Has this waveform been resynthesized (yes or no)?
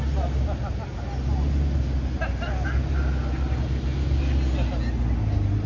no